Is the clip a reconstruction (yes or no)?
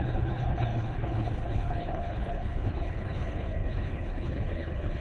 yes